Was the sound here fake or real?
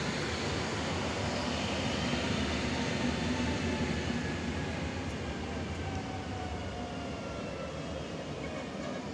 real